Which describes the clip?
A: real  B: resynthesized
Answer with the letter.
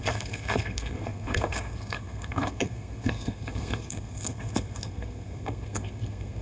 B